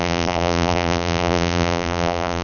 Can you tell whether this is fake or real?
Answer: fake